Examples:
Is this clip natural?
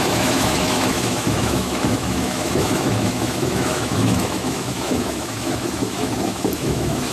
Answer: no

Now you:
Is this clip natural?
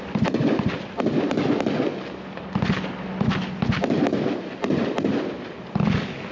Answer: yes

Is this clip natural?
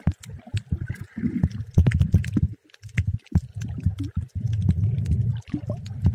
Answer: yes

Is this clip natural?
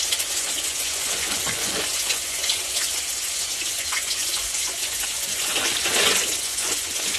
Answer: no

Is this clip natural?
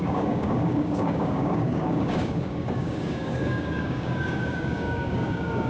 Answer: no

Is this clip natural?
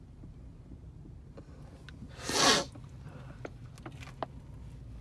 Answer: yes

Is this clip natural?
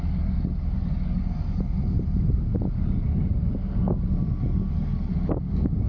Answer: yes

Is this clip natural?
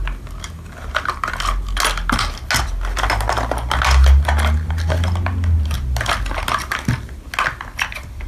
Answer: yes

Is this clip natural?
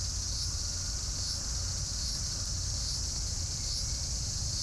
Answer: yes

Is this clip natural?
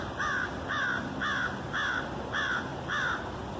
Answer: yes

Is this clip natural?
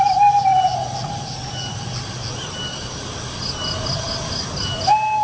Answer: yes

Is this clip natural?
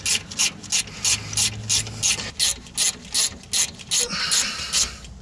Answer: yes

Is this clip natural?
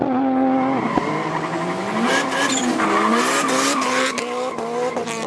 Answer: yes